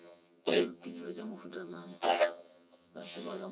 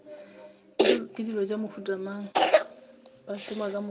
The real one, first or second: second